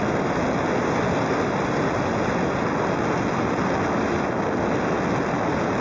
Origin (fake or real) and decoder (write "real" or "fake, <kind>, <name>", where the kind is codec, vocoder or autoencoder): real